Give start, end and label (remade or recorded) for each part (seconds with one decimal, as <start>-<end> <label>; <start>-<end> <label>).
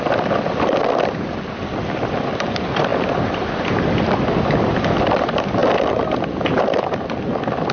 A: 0.0-7.7 recorded